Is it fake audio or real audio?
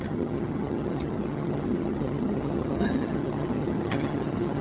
fake